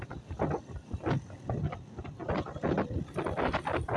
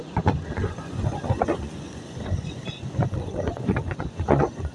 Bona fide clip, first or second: first